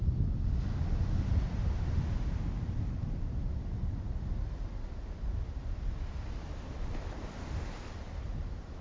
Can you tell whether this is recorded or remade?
recorded